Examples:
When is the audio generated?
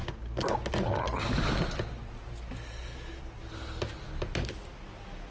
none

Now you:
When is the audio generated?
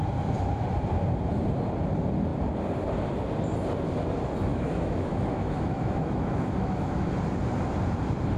4.5-7.1 (autoencoder, DAC-VAE)